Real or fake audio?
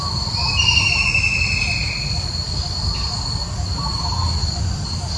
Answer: real